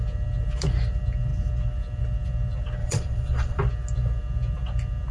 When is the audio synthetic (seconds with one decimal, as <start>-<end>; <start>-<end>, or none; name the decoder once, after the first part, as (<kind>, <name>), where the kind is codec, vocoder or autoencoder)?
2.8-3.6 (vocoder, Vocos)